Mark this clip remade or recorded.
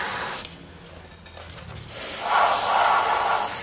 recorded